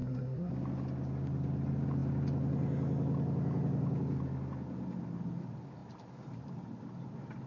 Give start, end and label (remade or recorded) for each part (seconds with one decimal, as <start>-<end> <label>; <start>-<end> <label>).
0.0-0.5 remade; 0.5-7.5 recorded